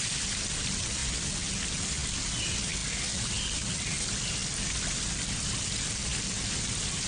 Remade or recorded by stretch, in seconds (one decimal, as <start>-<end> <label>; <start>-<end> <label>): 0.0-7.1 recorded